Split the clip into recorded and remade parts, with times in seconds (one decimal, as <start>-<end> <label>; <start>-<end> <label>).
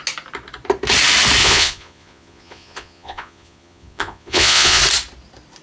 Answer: 0.0-1.4 recorded; 1.4-4.8 remade; 4.8-5.6 recorded